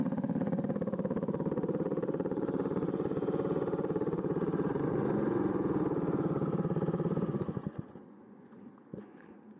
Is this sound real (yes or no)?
no